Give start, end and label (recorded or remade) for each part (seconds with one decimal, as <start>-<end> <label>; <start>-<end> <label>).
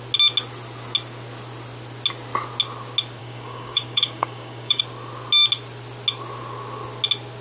0.0-3.2 recorded; 3.2-4.8 remade; 4.8-7.4 recorded